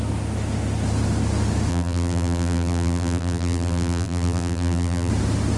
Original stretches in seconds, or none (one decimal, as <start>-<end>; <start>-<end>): 0.0-1.7; 5.1-5.6